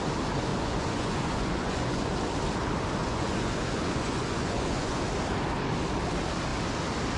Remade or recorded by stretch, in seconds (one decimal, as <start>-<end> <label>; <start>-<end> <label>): 0.0-0.5 recorded; 0.5-2.1 remade; 2.1-3.0 recorded; 3.0-5.0 remade; 5.0-7.2 recorded